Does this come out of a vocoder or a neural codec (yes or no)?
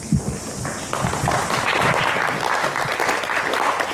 no